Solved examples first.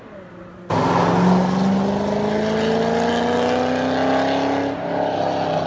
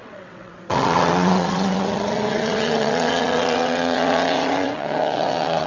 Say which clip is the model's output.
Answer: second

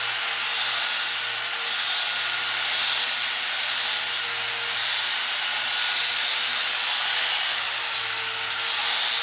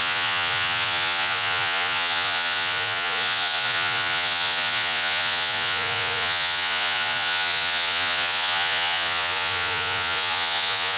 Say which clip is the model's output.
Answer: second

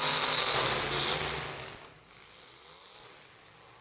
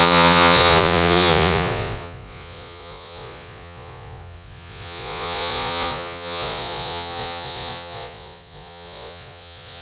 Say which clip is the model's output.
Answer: second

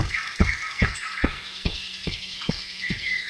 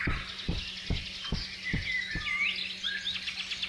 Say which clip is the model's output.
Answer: first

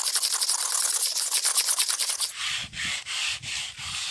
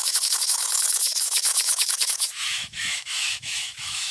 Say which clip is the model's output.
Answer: second